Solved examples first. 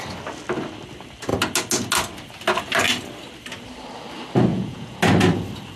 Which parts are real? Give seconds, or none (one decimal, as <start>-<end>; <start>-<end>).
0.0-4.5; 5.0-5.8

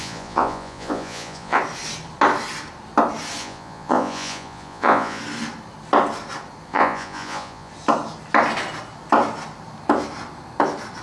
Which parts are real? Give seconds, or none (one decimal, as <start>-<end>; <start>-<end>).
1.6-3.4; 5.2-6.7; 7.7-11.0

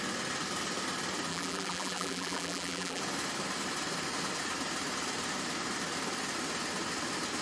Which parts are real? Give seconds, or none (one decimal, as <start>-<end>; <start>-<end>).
0.0-1.3; 3.0-7.4

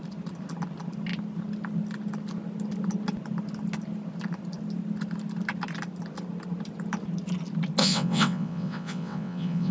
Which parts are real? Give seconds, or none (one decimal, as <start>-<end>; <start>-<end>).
0.0-7.8

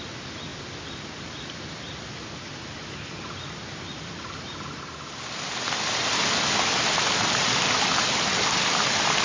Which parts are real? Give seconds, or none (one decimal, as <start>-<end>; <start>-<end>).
0.0-9.2